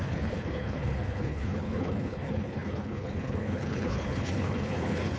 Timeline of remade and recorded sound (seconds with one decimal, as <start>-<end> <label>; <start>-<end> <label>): 0.0-5.2 remade